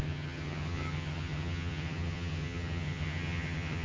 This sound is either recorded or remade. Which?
remade